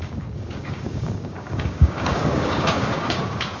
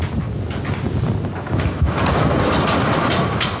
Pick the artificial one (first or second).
first